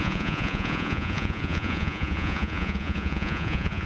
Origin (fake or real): fake